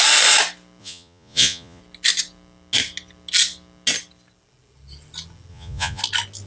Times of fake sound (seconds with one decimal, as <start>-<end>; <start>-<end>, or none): 0.8-1.8; 5.5-6.0